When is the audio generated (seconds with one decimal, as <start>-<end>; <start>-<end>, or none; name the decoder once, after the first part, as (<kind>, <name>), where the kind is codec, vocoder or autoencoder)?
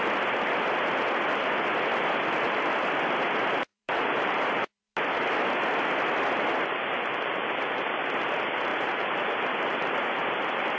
3.7-4.8 (vocoder, BigVGAN v2); 8.7-10.2